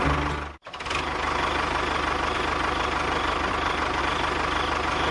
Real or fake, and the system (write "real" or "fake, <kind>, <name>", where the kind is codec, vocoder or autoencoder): real